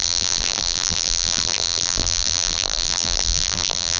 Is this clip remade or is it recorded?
remade